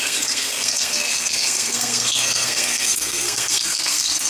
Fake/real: fake